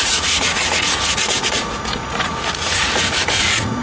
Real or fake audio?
fake